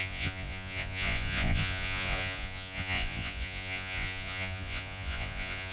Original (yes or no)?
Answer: no